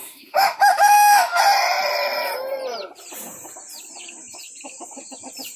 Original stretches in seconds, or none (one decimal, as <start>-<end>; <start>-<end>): 1.4-5.6